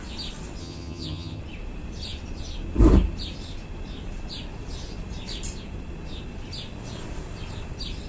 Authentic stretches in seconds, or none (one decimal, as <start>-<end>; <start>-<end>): 0.0-0.6; 1.4-8.1